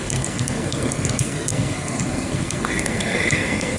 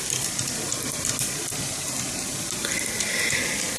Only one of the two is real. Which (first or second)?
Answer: second